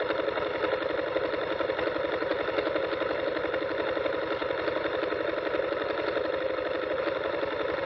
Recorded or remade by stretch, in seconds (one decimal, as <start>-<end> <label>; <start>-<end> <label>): 0.0-7.9 recorded

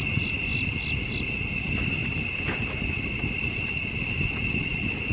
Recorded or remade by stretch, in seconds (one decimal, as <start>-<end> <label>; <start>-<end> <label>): 0.0-0.5 recorded; 0.5-1.1 remade; 1.1-2.0 recorded; 2.0-2.7 remade; 2.7-5.1 recorded